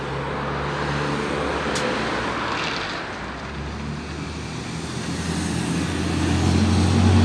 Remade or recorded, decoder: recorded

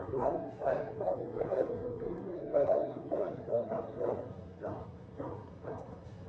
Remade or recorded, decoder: remade, codec, SNAC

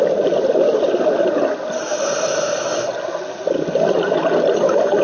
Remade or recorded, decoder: recorded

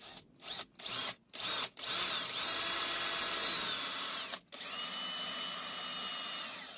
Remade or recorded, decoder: recorded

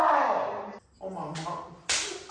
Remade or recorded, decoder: recorded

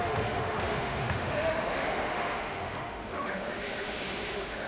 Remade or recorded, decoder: remade, autoencoder, DAC-VAE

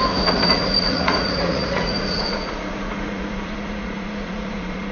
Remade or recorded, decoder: remade, vocoder, Vocos